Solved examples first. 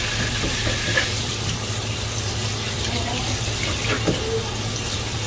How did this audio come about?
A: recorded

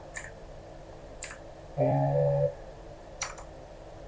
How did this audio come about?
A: remade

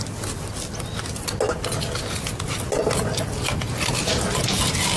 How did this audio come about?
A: recorded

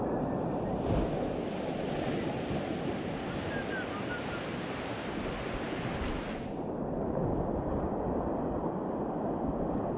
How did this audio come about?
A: recorded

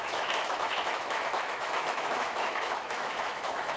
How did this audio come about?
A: remade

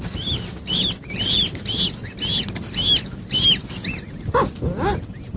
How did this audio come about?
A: recorded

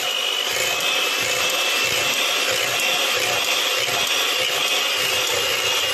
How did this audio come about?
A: recorded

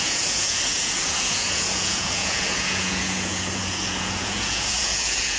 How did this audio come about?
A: remade